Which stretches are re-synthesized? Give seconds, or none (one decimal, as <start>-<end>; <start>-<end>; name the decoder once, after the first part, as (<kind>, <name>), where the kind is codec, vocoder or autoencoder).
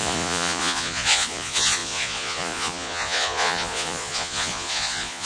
0.0-5.3 (vocoder, Vocos)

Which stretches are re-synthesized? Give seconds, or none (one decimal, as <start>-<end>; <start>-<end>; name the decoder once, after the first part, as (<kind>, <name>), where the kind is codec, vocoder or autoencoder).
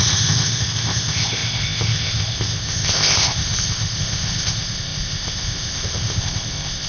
0.0-6.9 (codec, ZipCodec)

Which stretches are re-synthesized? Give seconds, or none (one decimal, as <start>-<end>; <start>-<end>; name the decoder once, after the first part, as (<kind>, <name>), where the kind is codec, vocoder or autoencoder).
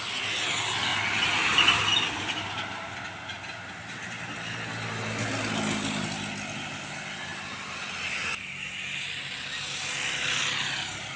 none